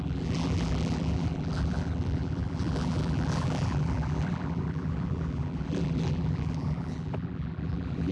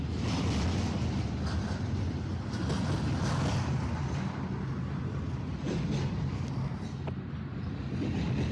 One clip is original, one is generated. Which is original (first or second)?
second